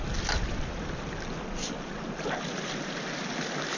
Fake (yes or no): no